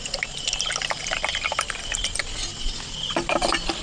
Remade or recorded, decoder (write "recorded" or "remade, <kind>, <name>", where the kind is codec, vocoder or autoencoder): recorded